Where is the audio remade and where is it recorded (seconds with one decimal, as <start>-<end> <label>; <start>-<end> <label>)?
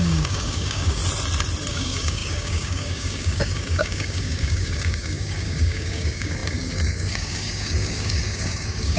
0.0-1.0 remade; 1.0-1.7 recorded; 1.7-9.0 remade